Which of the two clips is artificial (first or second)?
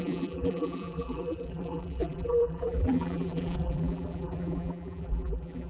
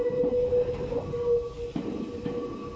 first